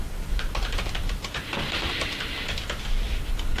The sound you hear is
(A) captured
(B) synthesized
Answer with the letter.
A